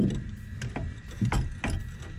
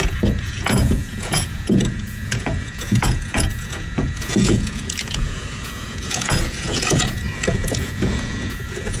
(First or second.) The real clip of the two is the first